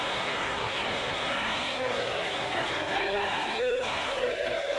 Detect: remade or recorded remade